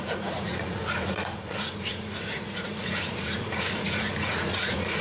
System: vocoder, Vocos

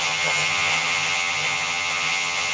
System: vocoder, HiFi-GAN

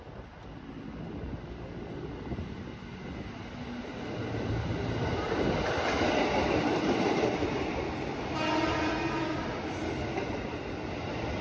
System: none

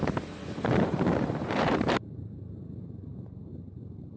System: vocoder, BigVGAN v2